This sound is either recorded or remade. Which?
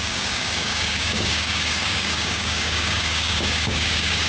remade